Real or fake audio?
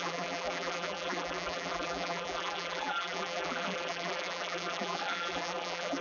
fake